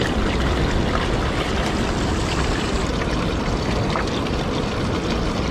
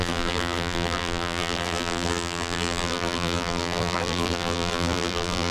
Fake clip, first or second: second